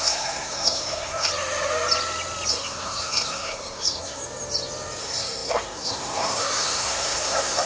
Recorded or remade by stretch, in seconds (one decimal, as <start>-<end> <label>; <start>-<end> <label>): 0.0-1.3 remade; 1.3-2.5 recorded; 2.5-4.2 remade; 4.2-5.0 recorded; 5.0-7.7 remade